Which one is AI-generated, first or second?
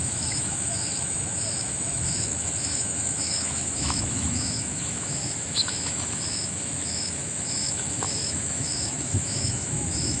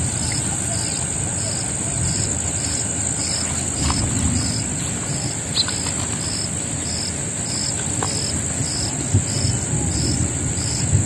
first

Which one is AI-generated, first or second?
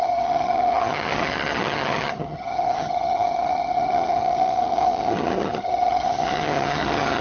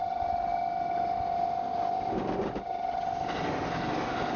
first